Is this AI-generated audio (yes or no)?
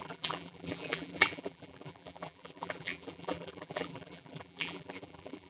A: yes